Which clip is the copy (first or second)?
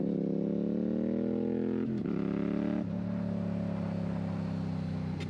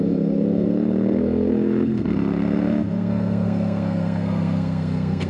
second